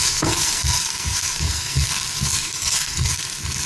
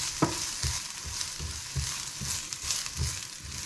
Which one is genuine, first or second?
second